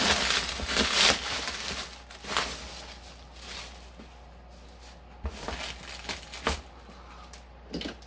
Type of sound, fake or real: real